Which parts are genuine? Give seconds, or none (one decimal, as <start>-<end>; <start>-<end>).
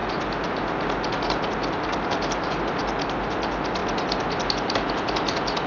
0.0-5.7